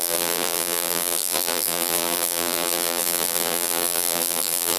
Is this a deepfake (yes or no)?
yes